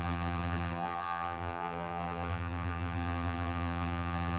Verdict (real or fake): fake